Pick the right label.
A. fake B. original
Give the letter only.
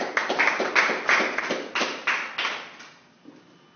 B